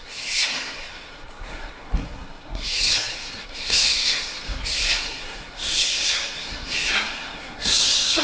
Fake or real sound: fake